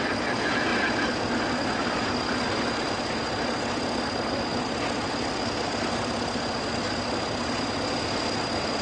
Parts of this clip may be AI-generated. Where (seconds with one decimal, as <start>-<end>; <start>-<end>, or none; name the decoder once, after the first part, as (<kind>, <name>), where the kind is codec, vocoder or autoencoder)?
none